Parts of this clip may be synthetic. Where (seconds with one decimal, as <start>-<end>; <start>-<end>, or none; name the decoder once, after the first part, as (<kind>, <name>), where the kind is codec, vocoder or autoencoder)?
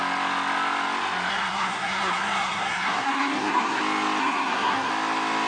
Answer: 1.3-3.8 (codec, SNAC); 4.2-4.9